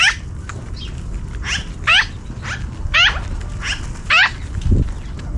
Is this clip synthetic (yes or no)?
no